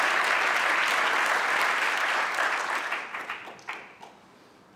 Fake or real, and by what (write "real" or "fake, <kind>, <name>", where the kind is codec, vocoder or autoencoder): real